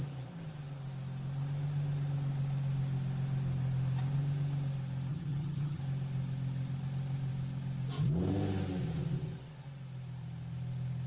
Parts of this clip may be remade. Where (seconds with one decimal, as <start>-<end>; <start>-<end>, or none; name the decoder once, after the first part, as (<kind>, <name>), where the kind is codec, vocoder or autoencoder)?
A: 5.1-5.8 (vocoder, HiFi-GAN)